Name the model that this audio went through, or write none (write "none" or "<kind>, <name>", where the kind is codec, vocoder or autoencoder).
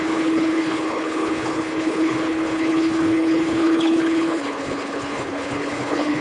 codec, HILCodec